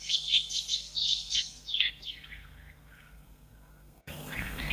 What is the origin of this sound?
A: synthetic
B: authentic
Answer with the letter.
A